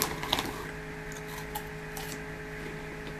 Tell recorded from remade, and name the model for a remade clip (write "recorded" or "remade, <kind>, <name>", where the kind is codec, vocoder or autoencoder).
recorded